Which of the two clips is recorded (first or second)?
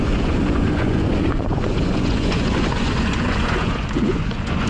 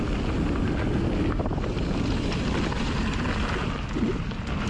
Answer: second